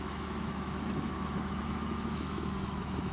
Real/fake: fake